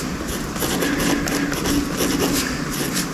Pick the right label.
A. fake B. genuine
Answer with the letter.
B